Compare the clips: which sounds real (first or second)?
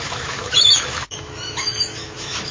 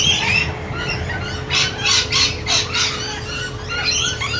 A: second